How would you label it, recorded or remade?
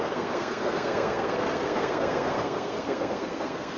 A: remade